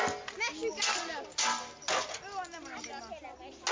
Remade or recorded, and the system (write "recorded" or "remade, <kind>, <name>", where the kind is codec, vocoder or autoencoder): recorded